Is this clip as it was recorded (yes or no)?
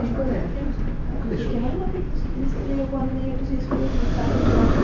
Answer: yes